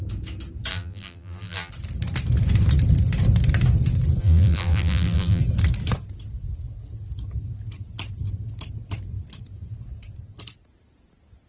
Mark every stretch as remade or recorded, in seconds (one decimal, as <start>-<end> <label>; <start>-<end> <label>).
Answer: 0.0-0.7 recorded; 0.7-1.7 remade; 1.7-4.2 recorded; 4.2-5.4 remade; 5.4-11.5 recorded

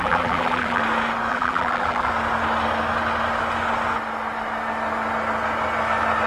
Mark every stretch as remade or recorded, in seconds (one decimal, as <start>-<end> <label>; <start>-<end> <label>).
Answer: 0.0-0.8 remade; 0.8-1.3 recorded; 1.3-2.1 remade; 2.1-6.3 recorded

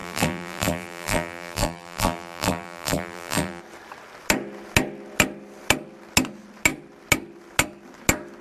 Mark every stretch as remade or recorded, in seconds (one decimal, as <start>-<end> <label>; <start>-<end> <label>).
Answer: 0.0-3.6 remade; 3.6-8.4 recorded

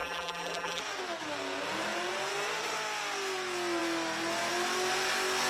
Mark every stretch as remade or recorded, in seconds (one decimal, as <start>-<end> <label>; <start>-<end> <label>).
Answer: 0.0-0.8 remade; 0.8-5.5 recorded

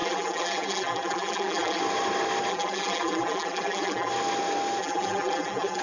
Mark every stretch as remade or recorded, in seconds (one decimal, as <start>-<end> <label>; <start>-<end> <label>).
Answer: 0.0-1.8 remade; 1.8-2.5 recorded; 2.5-4.1 remade; 4.1-4.8 recorded; 4.8-5.8 remade